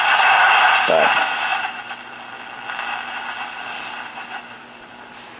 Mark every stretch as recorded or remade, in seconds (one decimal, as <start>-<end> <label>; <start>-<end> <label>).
0.0-5.4 recorded